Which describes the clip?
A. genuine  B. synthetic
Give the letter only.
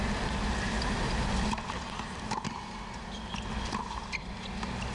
A